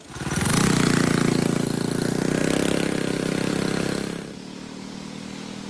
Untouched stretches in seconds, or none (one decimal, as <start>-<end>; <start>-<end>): 0.0-5.7